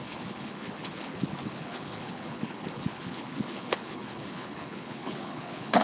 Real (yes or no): no